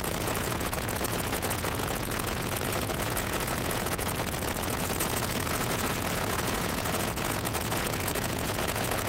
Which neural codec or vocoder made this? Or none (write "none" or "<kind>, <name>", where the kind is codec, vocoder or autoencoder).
vocoder, Vocos